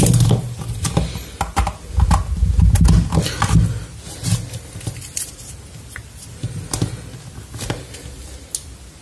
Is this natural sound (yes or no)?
yes